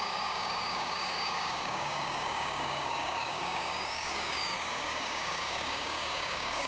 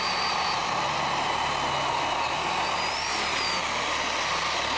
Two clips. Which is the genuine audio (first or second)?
second